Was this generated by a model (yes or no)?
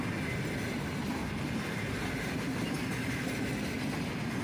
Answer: no